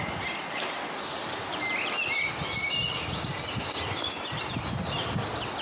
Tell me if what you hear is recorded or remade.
recorded